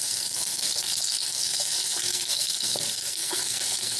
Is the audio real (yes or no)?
no